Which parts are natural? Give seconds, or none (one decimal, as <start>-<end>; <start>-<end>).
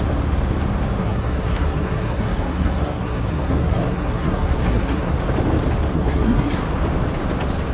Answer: 0.0-1.0; 5.1-5.9; 6.6-7.7